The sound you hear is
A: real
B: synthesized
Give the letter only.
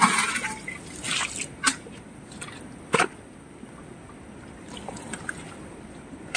A